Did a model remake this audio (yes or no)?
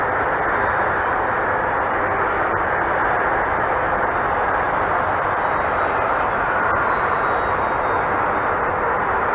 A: no